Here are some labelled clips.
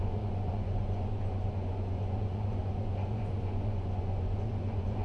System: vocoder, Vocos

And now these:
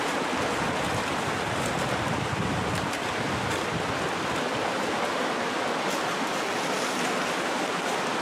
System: none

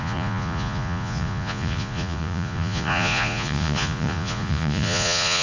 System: vocoder, Vocos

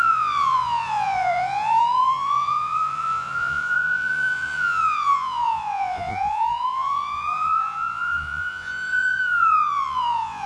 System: vocoder, Vocos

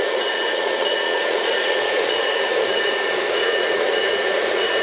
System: vocoder, Vocos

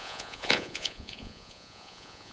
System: vocoder, Vocos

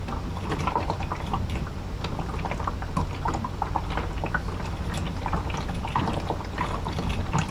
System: none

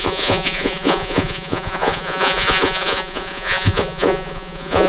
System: vocoder, Vocos